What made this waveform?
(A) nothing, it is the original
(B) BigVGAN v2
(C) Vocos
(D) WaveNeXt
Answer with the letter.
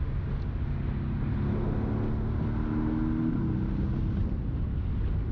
A